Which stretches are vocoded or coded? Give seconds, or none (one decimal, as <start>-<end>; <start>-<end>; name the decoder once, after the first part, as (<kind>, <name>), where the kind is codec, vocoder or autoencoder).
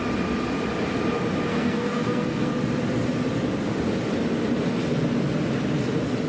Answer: 1.5-2.5 (codec, SNAC)